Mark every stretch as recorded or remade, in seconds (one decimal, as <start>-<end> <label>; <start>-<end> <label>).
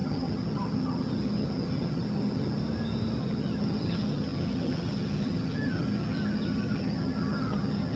0.0-2.6 remade; 2.6-3.2 recorded; 3.2-8.0 remade